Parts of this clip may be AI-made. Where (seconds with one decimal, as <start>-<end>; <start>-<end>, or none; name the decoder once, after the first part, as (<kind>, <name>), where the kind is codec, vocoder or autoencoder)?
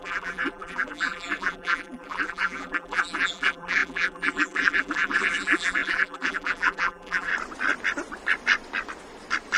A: 0.0-7.3 (vocoder, BigVGAN v2)